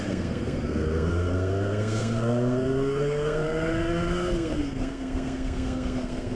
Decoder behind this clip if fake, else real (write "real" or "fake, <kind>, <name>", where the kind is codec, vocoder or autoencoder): fake, codec, SNAC